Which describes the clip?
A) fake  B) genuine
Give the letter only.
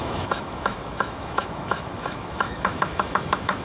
A